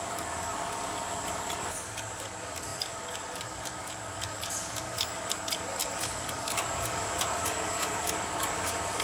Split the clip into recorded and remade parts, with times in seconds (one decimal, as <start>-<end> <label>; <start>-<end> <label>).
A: 0.0-9.0 remade